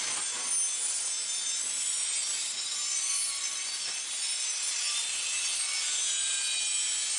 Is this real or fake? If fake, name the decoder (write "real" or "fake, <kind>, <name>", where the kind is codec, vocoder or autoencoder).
real